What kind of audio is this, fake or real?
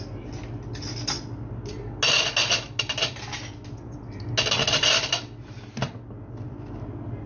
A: real